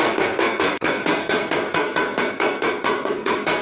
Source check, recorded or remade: remade